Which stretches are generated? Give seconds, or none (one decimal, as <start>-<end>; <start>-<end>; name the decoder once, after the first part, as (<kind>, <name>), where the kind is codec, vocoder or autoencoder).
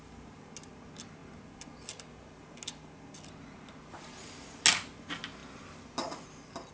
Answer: none